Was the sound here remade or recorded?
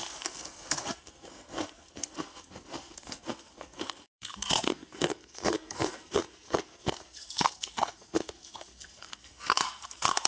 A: remade